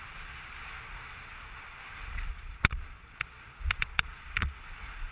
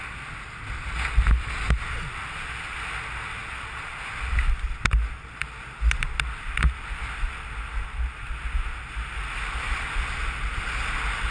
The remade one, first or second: first